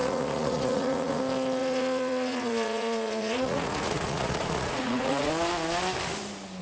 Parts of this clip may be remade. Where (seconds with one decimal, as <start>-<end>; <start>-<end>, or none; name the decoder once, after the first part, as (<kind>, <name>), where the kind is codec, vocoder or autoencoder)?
0.0-1.2 (vocoder, Vocos); 1.6-5.3

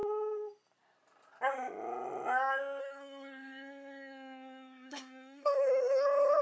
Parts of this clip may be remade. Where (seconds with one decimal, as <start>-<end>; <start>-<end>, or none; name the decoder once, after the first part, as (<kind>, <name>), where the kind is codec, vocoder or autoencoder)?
2.8-6.4 (codec, SNAC)

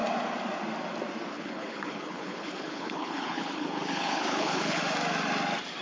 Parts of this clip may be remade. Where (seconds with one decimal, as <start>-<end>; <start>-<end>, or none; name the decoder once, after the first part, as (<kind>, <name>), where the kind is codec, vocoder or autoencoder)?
1.3-4.8 (codec, HILCodec)

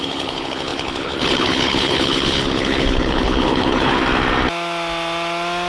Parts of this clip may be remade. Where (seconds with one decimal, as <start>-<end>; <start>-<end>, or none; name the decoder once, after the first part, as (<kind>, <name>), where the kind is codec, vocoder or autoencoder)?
0.0-4.0 (codec, HILCodec)

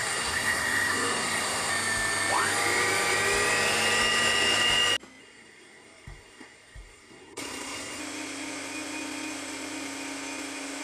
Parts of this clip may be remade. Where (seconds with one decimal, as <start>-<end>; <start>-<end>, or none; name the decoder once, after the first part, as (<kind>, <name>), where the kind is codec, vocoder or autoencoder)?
0.0-1.7 (codec, SNAC); 5.2-8.0